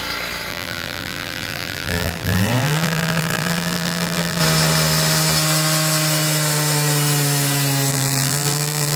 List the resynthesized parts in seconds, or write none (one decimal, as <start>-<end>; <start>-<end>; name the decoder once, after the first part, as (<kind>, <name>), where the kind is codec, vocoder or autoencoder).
0.5-4.4 (vocoder, BigVGAN v2); 7.9-9.0

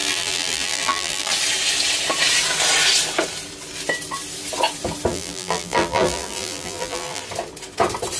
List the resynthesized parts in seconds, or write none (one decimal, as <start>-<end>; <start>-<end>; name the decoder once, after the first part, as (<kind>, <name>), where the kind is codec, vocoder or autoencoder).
0.0-1.3 (vocoder, BigVGAN v2); 5.1-7.2

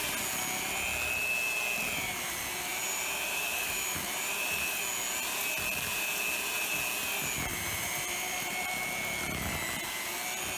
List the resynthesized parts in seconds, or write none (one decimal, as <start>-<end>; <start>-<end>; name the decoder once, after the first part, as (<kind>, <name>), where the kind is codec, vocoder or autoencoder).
2.7-4.8 (vocoder, BigVGAN v2); 7.5-8.5